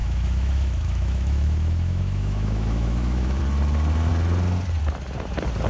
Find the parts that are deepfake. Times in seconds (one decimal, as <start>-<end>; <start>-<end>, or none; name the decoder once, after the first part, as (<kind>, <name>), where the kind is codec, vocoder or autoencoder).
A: 0.0-3.4 (autoencoder, DAC-VAE)